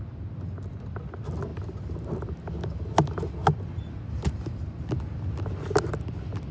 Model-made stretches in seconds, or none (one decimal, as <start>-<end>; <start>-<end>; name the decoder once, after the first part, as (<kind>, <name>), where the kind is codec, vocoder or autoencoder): none